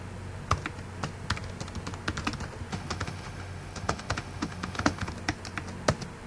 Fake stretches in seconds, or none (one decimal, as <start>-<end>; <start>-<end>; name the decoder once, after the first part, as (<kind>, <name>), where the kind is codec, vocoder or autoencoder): 2.7-5.1 (autoencoder, DAC-VAE)